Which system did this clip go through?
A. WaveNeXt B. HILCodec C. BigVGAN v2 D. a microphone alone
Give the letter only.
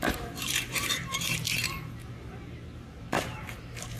C